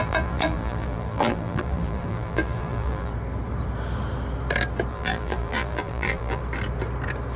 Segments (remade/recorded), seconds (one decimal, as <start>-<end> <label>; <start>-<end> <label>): 0.0-3.1 remade; 3.1-4.9 recorded; 4.9-6.4 remade; 6.4-7.4 recorded

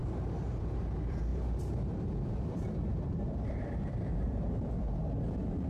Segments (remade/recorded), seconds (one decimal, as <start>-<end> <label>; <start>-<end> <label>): 0.0-0.6 remade; 0.6-1.3 recorded; 1.3-4.7 remade; 4.7-5.7 recorded